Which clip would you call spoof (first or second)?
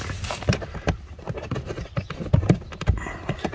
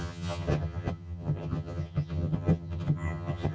second